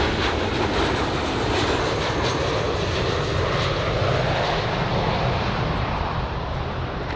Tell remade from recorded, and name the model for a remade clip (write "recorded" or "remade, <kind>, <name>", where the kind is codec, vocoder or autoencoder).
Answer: recorded